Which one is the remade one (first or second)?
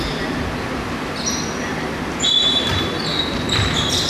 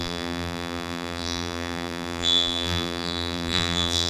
second